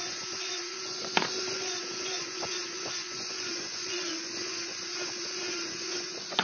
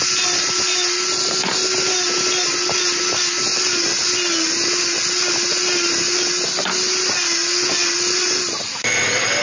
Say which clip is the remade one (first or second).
first